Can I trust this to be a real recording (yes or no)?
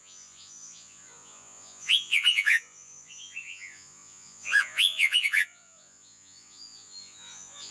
no